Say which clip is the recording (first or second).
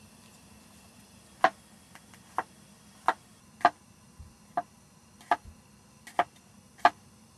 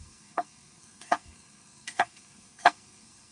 first